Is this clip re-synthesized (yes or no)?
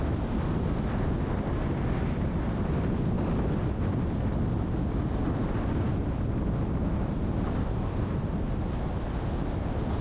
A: no